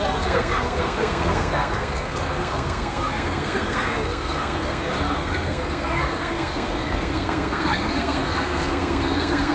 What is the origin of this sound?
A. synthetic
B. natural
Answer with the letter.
A